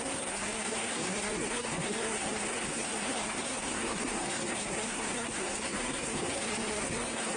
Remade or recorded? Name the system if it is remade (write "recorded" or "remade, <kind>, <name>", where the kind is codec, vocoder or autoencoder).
remade, codec, SNAC